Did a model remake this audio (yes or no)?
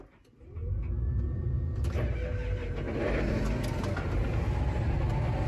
no